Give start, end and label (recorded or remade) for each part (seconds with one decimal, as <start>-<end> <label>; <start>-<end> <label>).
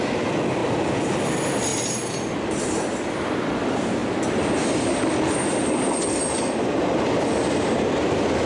0.0-8.5 recorded